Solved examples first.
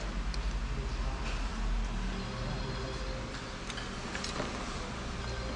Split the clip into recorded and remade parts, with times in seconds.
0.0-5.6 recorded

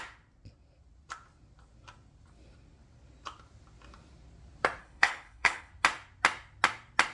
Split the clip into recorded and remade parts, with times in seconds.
0.0-4.8 recorded; 4.8-5.7 remade; 5.7-7.1 recorded

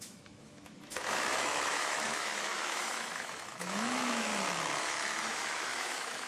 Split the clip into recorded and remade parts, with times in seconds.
0.0-4.3 remade; 4.3-4.8 recorded; 4.8-6.3 remade

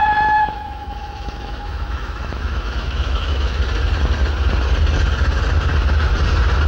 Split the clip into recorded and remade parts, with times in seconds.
0.0-3.6 remade; 3.6-6.7 recorded